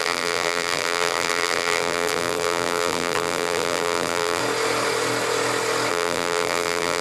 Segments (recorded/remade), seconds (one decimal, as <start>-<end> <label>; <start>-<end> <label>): 0.0-4.4 remade; 4.4-5.9 recorded; 5.9-7.0 remade